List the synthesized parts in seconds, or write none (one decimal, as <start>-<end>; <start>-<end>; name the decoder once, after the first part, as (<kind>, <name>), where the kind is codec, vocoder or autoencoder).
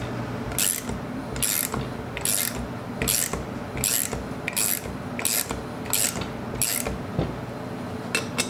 none